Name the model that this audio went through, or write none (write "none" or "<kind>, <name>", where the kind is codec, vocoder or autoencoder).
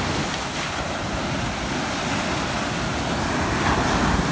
none